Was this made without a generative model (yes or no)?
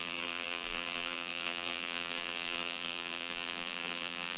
no